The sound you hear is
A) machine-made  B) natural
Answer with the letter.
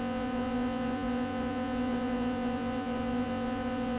A